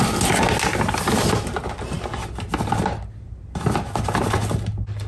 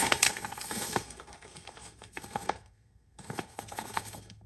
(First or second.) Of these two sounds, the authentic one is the first